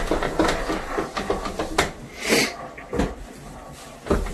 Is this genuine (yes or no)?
yes